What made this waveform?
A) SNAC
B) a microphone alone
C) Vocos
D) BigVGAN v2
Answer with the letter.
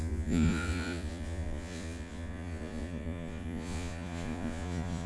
C